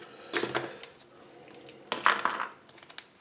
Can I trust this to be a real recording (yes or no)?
yes